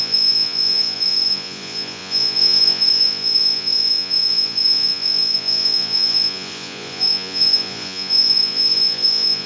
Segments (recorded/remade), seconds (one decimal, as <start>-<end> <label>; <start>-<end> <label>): 0.0-9.5 remade